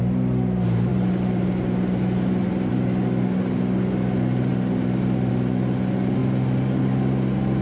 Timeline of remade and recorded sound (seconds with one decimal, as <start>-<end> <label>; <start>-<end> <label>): 0.0-7.6 recorded